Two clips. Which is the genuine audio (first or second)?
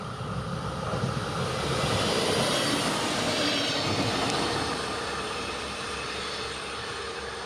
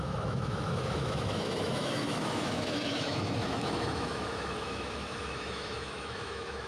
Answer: first